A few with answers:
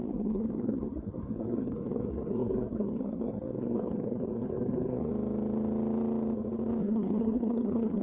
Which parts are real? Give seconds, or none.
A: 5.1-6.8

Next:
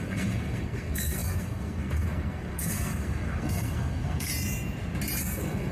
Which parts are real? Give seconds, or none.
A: 4.3-5.2

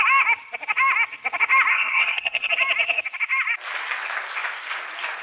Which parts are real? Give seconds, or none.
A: 0.0-1.7; 2.5-5.2

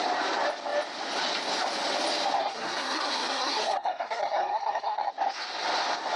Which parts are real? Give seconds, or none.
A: 0.0-2.4; 5.1-6.2

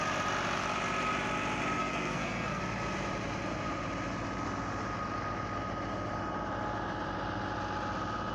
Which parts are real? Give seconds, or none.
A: 0.0-1.8; 2.6-8.3